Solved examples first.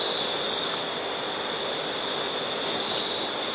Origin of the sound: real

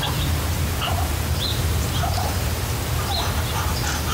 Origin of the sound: real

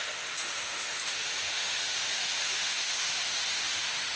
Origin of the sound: fake